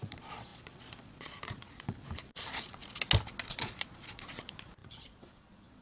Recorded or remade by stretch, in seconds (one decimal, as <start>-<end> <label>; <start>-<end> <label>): 0.0-2.8 remade; 2.8-3.5 recorded; 3.5-5.8 remade